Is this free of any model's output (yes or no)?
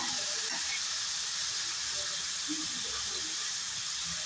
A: yes